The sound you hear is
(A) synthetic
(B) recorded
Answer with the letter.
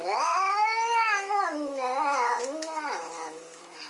A